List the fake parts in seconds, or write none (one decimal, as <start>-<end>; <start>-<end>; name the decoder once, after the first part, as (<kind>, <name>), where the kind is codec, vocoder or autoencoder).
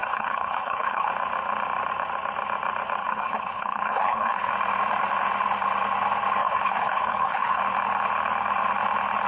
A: 0.0-1.1 (codec, HILCodec); 3.0-4.5; 6.4-7.6